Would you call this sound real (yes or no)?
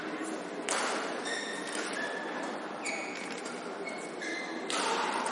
no